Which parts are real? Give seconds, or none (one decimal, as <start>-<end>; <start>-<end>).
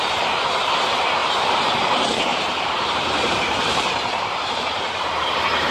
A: none